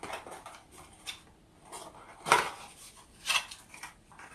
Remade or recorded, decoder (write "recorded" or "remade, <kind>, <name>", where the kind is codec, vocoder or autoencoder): recorded